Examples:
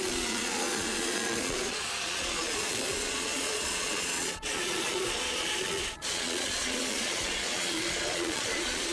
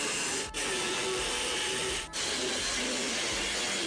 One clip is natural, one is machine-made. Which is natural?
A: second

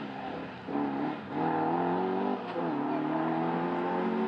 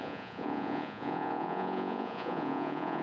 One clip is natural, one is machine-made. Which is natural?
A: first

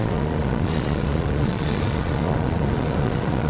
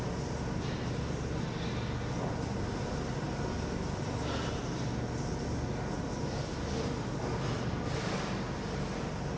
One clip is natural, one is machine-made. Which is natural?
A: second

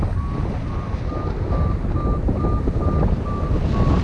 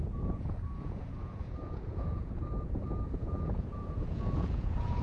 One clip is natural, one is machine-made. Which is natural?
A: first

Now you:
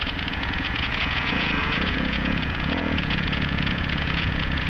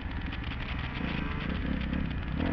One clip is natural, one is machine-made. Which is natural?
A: second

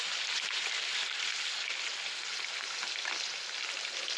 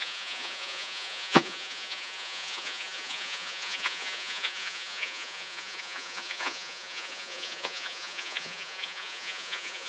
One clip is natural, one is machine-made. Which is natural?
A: first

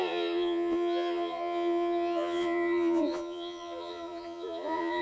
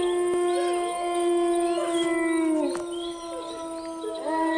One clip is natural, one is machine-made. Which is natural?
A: second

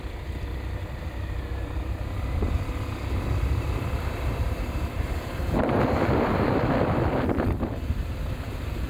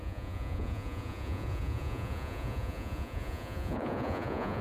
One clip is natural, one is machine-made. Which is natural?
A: first